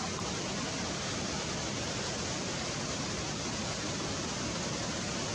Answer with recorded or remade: recorded